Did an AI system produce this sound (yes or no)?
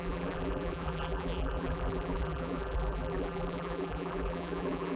yes